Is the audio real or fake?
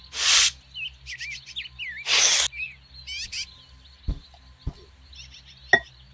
real